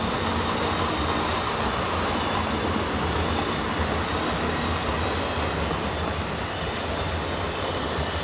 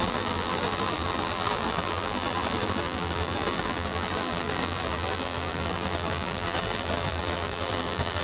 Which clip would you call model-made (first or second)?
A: second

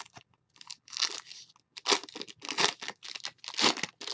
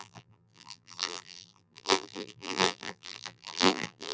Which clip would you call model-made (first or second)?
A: second